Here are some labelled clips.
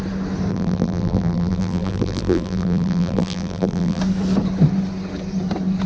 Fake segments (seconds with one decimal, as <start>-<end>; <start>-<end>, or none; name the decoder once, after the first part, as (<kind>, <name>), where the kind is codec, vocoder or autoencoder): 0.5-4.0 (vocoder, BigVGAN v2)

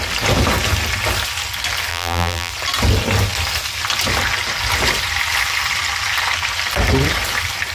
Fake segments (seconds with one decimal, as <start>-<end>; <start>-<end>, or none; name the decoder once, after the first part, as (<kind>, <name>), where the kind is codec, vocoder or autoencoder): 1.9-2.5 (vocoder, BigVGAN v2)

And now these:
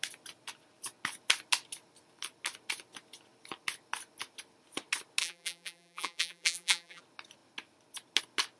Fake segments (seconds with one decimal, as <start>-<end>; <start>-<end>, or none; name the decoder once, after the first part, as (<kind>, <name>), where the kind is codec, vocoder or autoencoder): 5.2-7.0 (vocoder, BigVGAN v2)

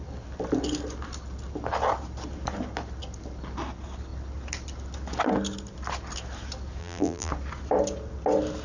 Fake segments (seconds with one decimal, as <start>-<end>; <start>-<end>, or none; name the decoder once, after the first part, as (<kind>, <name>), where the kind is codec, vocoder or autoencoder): 6.8-7.3 (vocoder, BigVGAN v2)

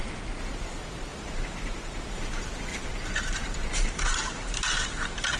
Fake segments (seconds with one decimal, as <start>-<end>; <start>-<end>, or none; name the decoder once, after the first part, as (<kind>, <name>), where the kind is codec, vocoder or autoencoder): 1.1-2.3 (vocoder, BigVGAN v2); 2.7-5.4